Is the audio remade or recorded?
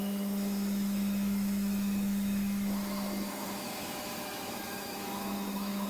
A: remade